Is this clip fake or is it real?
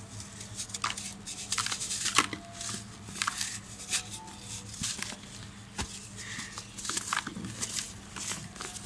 real